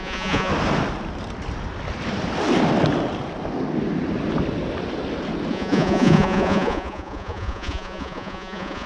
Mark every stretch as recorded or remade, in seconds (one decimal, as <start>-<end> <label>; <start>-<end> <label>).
0.0-0.5 remade; 0.5-5.5 recorded; 5.5-8.9 remade